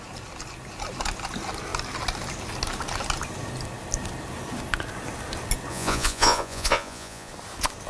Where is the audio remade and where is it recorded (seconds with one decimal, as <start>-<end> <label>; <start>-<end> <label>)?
0.0-5.7 recorded; 5.7-7.3 remade; 7.3-7.9 recorded